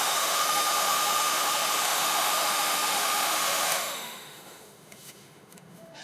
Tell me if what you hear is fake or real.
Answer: fake